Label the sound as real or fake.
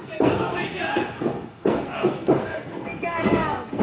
fake